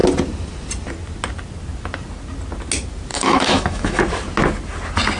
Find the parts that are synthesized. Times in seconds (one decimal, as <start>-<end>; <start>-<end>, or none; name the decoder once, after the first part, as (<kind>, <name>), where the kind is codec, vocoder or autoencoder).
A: 3.1-4.0 (autoencoder, DAC-VAE)